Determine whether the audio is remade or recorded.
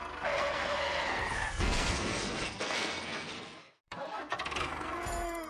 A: remade